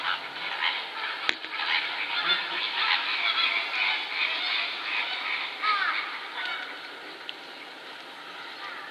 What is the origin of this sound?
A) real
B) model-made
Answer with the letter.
A